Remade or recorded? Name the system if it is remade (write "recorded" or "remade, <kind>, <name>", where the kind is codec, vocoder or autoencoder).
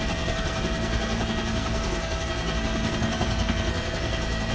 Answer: remade, codec, SNAC